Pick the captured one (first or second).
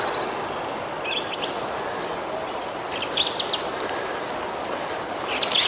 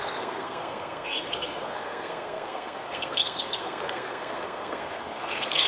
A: first